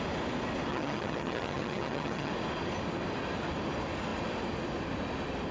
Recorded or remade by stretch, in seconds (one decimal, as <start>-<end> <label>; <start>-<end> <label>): 0.0-0.7 recorded; 0.7-2.3 remade; 2.3-5.5 recorded